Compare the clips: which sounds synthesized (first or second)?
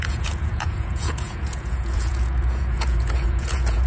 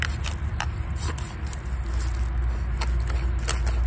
first